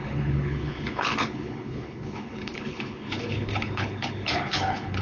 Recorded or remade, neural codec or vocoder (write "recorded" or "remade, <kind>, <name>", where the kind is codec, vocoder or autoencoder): remade, codec, HILCodec